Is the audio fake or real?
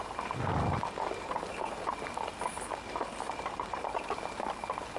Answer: real